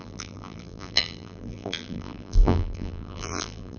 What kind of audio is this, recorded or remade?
remade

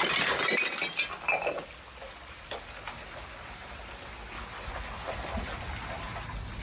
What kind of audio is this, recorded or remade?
recorded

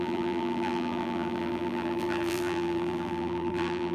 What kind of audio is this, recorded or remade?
remade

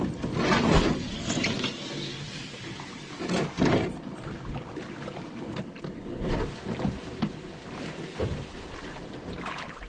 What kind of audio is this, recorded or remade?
recorded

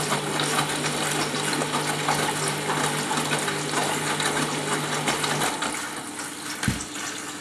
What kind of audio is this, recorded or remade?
recorded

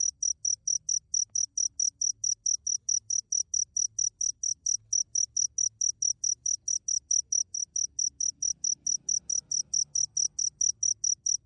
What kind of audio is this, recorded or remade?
recorded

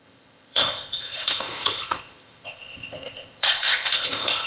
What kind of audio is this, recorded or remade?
remade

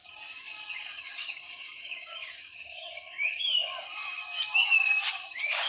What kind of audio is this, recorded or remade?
remade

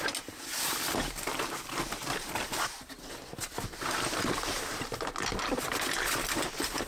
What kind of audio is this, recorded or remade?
recorded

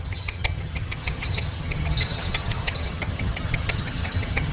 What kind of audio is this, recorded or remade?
remade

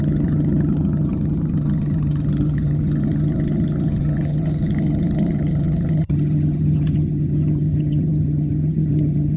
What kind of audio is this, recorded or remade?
remade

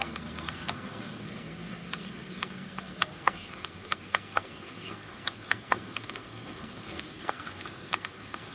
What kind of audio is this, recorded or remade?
remade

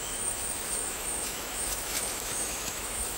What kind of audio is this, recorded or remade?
remade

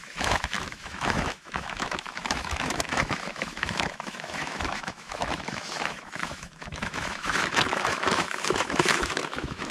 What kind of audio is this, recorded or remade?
remade